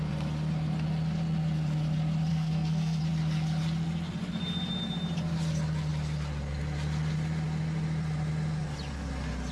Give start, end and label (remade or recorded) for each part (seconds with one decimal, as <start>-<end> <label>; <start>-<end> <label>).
0.0-2.3 recorded; 2.3-3.0 remade; 3.0-9.5 recorded